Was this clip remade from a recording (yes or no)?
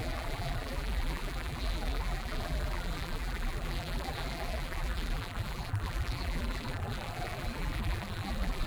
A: yes